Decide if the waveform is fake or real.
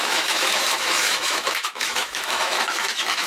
fake